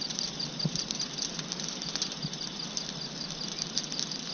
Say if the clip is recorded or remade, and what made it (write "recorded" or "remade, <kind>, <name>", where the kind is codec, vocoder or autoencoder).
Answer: recorded